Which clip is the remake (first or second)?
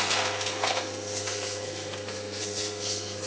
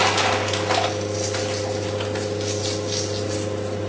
first